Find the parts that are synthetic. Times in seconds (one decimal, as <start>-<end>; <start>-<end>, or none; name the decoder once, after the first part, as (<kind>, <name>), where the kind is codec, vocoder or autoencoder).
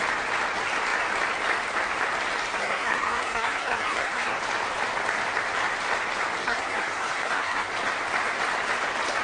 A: 2.6-4.4 (codec, SNAC); 6.4-7.7